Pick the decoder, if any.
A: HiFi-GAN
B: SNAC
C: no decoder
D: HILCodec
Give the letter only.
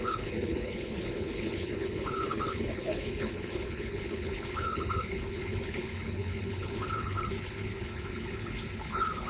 D